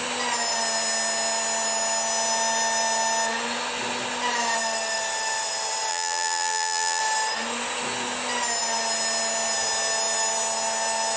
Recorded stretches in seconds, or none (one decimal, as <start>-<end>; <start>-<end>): 0.0-5.9; 7.0-11.2